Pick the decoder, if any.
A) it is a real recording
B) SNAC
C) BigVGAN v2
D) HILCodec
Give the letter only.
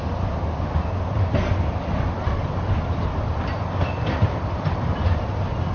A